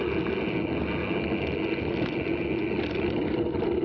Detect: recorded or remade recorded